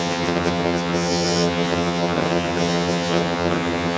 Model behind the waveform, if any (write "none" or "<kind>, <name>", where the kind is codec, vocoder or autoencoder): vocoder, HiFi-GAN